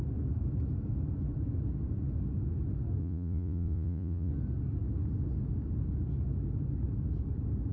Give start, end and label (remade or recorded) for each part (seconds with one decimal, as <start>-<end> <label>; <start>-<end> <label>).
0.0-3.0 recorded; 3.0-4.3 remade; 4.3-7.7 recorded